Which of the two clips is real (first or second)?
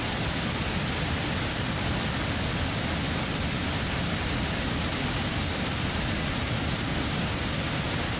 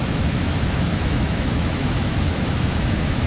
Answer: first